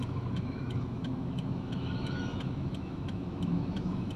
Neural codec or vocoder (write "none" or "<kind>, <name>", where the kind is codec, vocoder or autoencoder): autoencoder, DAC-VAE